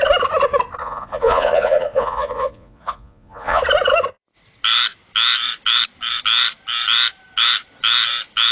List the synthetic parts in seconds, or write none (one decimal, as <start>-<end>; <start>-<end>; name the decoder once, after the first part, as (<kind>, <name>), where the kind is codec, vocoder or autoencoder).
0.8-3.6 (vocoder, Vocos)